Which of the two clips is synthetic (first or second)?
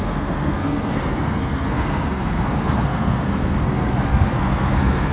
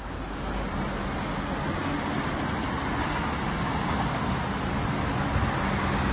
first